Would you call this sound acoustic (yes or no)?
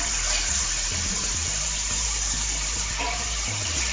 no